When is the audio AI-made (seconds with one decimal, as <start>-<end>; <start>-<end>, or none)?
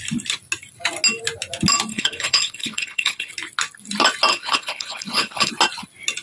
1.9-3.3; 4.3-5.5